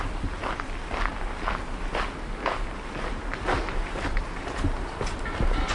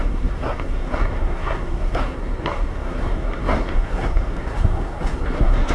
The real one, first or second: first